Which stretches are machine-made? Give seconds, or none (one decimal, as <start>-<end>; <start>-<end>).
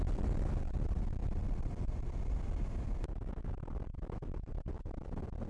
none